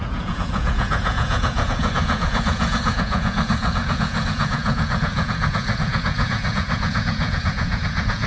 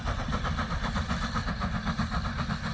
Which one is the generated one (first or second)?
first